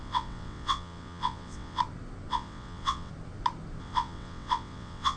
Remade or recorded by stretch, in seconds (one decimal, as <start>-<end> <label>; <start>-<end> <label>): 0.0-1.8 remade; 1.8-2.3 recorded; 2.3-3.1 remade; 3.1-3.8 recorded; 3.8-5.2 remade

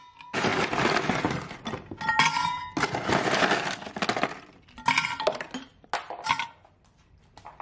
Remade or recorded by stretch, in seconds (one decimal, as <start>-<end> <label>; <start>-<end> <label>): 0.0-7.6 recorded